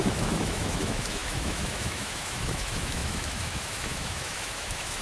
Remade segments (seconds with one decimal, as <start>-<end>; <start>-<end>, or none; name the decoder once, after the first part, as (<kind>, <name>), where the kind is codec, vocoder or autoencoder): 0.0-5.0 (autoencoder, DAC-VAE)